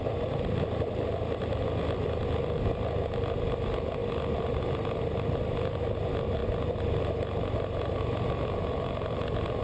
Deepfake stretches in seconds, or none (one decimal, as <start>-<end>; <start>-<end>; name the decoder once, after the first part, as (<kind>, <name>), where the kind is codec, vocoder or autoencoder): none